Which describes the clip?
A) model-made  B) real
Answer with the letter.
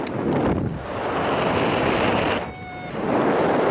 B